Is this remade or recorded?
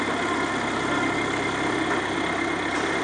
recorded